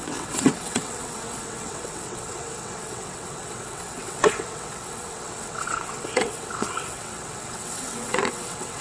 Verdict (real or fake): fake